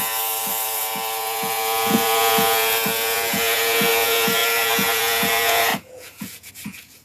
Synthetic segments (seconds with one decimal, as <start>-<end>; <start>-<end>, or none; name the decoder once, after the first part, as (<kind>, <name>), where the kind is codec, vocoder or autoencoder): 0.0-7.0 (vocoder, Vocos)